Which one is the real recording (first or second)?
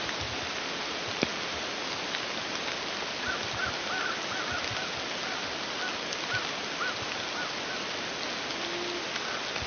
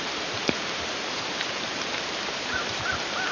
first